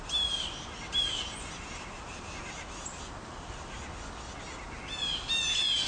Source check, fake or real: real